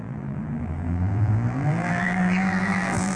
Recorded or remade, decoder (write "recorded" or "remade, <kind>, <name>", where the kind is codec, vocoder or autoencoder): remade, vocoder, BigVGAN v2